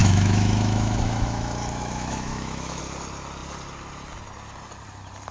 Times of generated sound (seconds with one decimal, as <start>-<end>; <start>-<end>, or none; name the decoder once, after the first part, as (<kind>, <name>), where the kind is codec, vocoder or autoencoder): 0.0-2.8 (autoencoder, DAC-VAE)